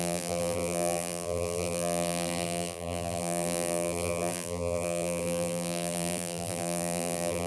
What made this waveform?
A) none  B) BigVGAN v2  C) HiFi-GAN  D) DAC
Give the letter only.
B